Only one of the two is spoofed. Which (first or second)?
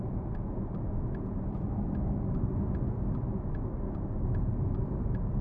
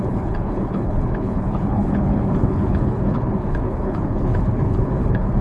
second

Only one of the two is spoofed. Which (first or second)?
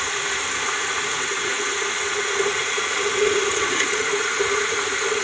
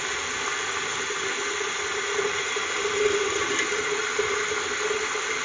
first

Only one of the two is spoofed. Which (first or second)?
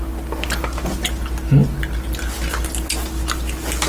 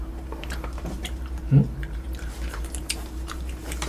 second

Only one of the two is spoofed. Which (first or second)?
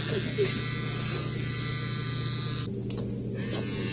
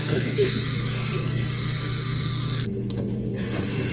second